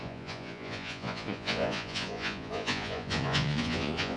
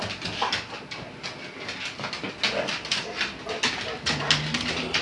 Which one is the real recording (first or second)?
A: second